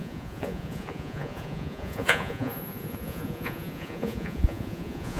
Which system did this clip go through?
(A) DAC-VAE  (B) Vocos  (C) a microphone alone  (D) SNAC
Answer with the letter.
B